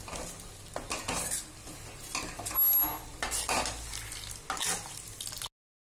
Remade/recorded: recorded